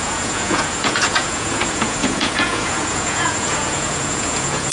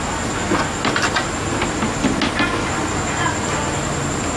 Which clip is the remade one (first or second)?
first